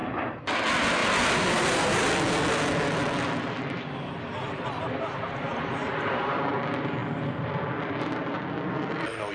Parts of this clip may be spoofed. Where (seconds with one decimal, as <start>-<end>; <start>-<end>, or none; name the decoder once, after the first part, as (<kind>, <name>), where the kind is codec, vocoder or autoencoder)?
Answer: 0.0-0.6 (vocoder, BigVGAN v2); 1.0-2.8; 5.5-6.5